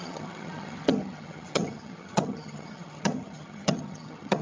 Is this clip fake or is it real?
fake